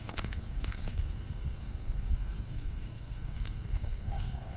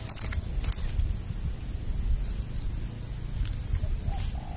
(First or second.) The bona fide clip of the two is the second